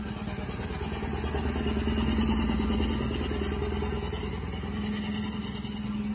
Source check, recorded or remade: recorded